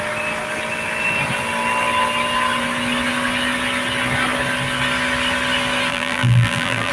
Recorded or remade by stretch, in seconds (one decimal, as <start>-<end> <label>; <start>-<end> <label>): 0.0-5.9 recorded; 5.9-6.9 remade